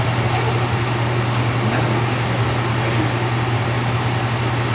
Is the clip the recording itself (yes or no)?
yes